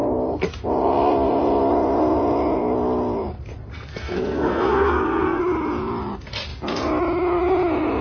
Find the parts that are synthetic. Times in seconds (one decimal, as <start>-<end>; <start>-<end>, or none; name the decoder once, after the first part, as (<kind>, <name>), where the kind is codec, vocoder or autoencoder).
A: 3.7-5.4 (codec, SNAC)